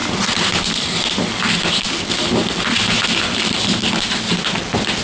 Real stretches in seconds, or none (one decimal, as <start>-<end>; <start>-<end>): 0.0-5.0